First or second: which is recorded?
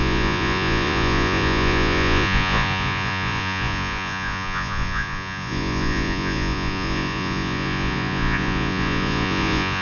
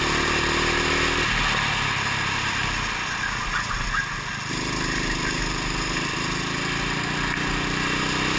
second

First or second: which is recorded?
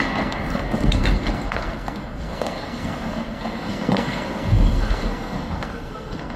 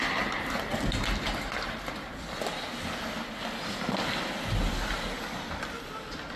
second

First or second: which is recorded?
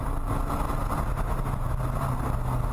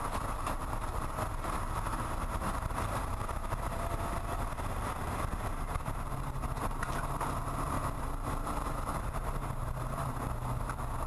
first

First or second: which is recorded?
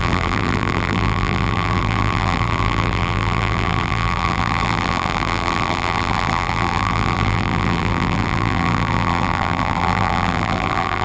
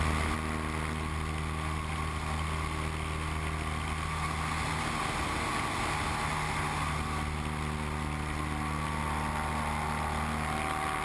second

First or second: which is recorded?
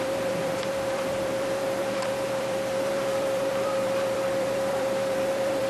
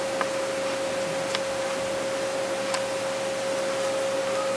second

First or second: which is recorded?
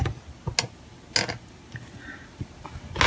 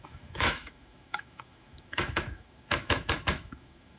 first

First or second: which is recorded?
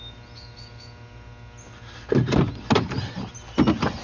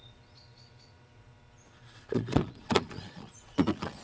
first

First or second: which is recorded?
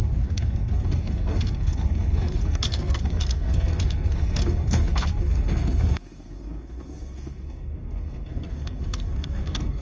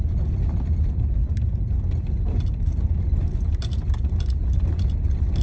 second